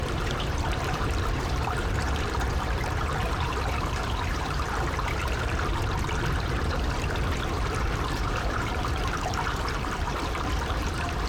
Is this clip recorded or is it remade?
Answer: remade